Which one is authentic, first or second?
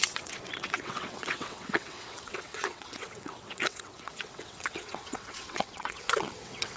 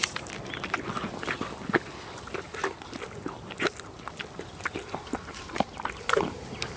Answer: second